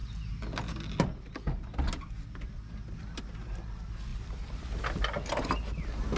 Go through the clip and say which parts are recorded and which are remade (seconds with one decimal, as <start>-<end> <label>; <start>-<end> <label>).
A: 0.0-4.1 recorded; 4.1-4.8 remade; 4.8-6.2 recorded